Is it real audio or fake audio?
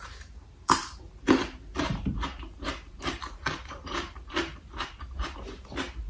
fake